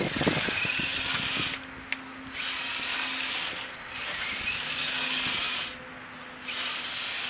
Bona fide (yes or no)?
yes